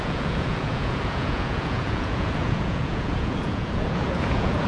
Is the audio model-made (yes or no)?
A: yes